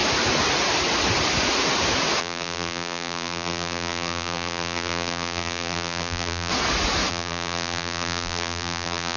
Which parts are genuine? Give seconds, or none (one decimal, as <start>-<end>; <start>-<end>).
0.0-2.2; 6.5-7.1